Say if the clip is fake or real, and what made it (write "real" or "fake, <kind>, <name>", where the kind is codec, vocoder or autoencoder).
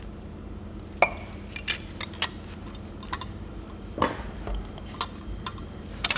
real